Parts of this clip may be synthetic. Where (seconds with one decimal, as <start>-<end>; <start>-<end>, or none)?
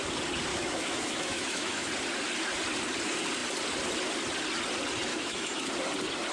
0.5-1.9; 5.1-5.7